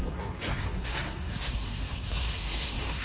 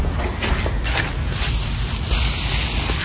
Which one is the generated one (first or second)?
first